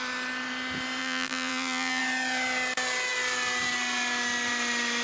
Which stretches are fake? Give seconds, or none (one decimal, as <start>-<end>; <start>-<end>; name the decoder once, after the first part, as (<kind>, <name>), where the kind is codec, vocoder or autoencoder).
1.0-2.0 (vocoder, BigVGAN v2)